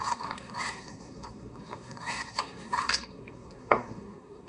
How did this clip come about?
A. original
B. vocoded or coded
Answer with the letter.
B